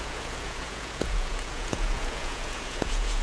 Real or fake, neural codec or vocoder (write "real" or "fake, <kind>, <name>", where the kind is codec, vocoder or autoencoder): fake, vocoder, Vocos